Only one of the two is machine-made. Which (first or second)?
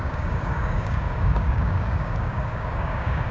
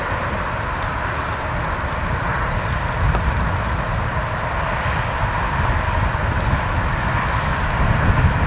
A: first